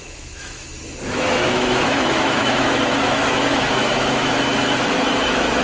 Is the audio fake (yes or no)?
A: yes